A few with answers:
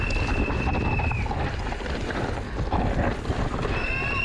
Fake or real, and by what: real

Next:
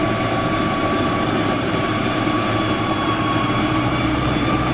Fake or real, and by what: fake, vocoder, BigVGAN v2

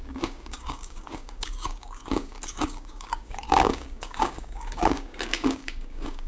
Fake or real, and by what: fake, codec, DAC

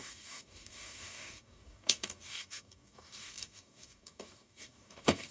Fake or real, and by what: fake, codec, DAC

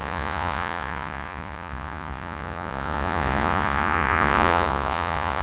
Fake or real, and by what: fake, vocoder, Vocos